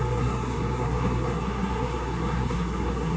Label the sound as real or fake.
fake